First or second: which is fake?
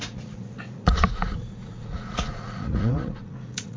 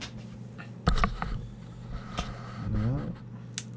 first